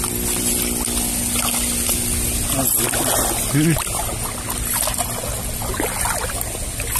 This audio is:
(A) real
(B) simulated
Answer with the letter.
A